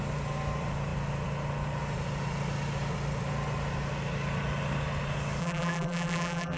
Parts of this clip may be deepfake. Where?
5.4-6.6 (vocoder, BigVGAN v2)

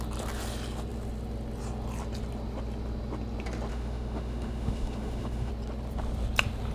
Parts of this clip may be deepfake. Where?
3.7-5.5 (autoencoder, DAC-VAE)

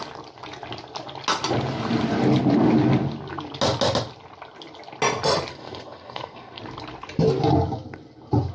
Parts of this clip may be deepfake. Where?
5.5-6.6 (codec, SNAC)

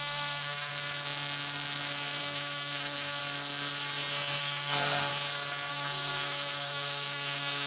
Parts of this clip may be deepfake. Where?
0.0-0.7 (codec, SNAC); 2.2-3.2; 4.4-5.1; 5.7-7.7

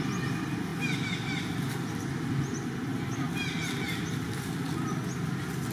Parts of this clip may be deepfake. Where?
none